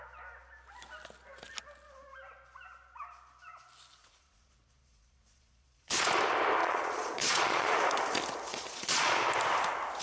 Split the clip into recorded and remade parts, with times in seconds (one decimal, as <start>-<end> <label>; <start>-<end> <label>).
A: 0.0-4.0 recorded; 4.0-6.1 remade; 6.1-6.6 recorded; 6.6-7.8 remade; 7.8-8.5 recorded; 8.5-9.3 remade; 9.3-10.0 recorded